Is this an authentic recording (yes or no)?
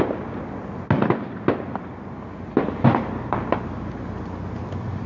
yes